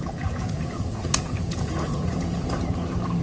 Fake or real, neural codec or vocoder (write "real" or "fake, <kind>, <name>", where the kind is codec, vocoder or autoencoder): fake, vocoder, Vocos